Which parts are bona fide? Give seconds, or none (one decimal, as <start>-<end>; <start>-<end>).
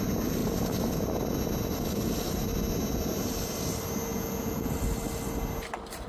0.0-4.1; 4.7-6.1